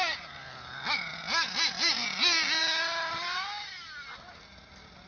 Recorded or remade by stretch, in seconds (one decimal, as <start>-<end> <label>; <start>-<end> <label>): 0.0-5.1 recorded